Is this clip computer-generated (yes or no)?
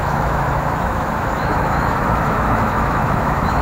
yes